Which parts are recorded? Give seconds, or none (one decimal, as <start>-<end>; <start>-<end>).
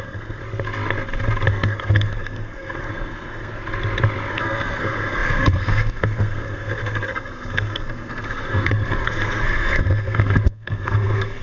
0.4-1.5; 3.5-4.3